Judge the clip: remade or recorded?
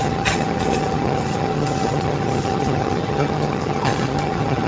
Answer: remade